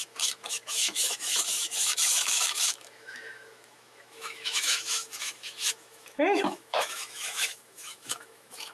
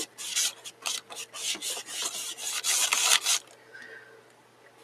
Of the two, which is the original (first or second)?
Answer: second